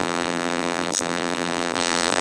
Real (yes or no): no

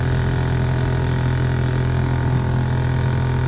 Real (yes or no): yes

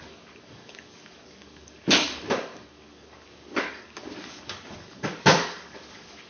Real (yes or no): no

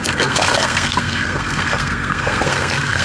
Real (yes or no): no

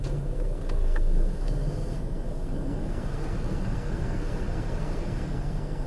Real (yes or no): no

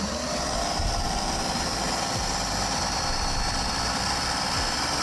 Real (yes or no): yes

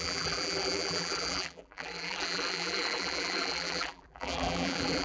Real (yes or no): no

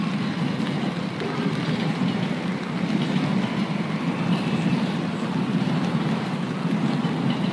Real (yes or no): no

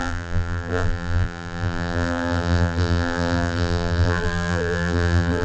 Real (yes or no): no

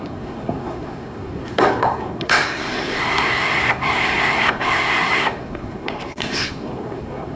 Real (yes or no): no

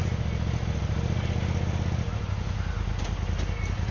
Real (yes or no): yes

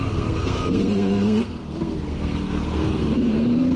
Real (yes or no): no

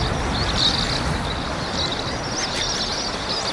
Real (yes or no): yes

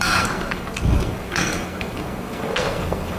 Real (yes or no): no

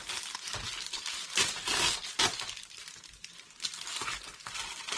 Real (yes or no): yes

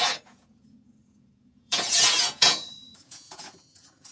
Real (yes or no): no